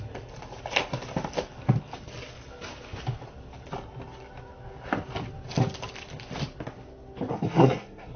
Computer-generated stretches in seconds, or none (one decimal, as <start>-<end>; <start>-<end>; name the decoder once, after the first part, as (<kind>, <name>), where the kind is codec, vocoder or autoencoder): 7.3-8.2 (codec, SNAC)